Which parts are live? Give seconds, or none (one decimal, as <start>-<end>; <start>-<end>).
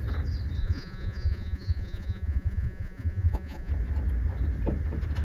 0.0-0.6; 3.7-5.2